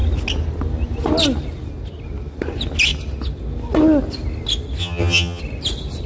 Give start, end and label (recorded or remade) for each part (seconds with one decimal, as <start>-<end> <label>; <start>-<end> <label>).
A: 0.0-4.8 recorded; 4.8-5.4 remade; 5.4-6.1 recorded

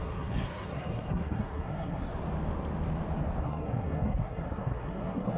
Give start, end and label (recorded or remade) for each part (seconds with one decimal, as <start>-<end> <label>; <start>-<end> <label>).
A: 0.0-2.1 remade; 2.1-3.4 recorded; 3.4-5.4 remade

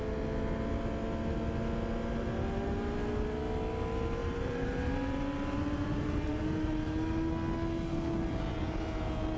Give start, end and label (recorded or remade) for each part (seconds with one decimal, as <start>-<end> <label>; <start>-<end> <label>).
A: 0.0-4.2 recorded; 4.2-7.3 remade; 7.3-9.4 recorded